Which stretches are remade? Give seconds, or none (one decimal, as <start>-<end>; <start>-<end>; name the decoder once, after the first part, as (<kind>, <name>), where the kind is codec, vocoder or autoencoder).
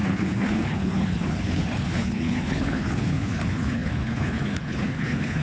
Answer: 0.0-5.4 (codec, HILCodec)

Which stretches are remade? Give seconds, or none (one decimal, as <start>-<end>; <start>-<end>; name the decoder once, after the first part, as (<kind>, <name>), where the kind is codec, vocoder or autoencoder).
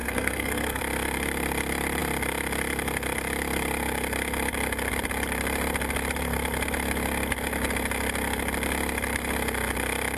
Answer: 0.0-0.8 (codec, SNAC)